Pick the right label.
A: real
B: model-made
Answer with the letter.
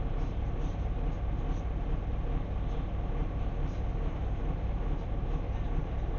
B